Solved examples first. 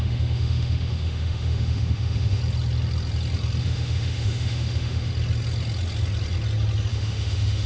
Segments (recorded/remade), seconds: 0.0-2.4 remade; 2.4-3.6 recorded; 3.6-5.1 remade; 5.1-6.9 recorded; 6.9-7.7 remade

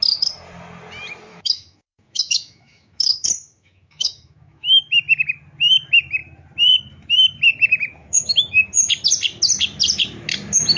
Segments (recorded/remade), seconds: 0.0-1.3 recorded; 1.3-4.8 remade; 4.8-8.0 recorded; 8.0-8.7 remade; 8.7-10.8 recorded